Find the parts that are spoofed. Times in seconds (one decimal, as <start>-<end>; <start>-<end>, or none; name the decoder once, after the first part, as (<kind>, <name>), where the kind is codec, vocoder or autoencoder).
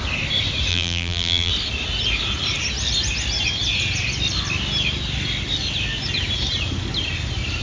0.7-1.5 (vocoder, BigVGAN v2)